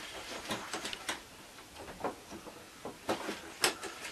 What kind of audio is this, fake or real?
real